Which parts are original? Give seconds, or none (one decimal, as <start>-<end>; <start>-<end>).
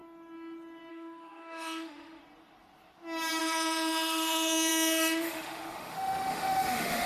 0.0-0.9; 2.2-3.4